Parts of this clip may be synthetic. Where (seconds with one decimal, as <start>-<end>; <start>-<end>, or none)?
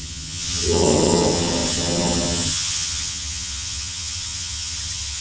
0.0-5.2